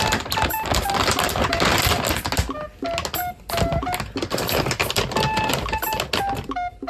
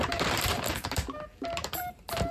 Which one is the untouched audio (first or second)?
first